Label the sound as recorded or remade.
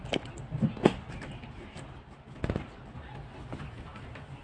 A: recorded